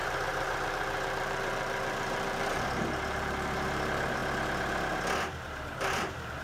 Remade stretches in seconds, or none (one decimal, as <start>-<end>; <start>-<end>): 0.0-4.2; 5.9-6.4